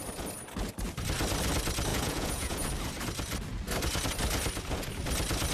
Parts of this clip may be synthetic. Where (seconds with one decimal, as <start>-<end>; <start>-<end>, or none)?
1.9-2.7